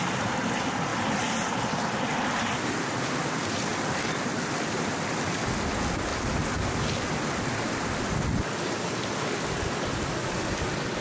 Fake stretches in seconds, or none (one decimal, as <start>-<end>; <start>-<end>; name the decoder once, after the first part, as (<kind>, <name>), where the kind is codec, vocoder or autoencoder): 0.9-2.9 (vocoder, BigVGAN v2); 3.7-5.6